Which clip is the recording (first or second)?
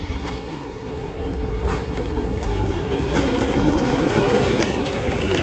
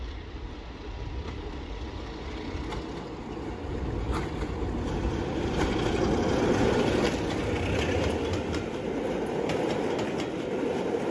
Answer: second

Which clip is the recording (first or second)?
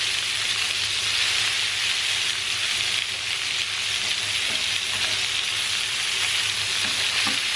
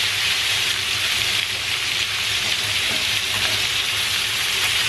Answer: first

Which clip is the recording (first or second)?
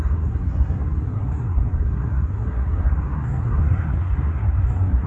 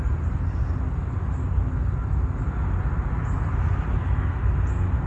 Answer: second